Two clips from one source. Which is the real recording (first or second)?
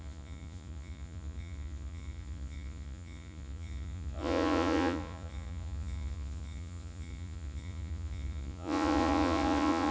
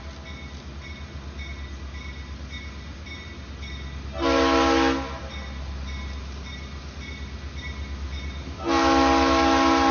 second